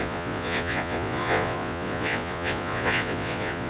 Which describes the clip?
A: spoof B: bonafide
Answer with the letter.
A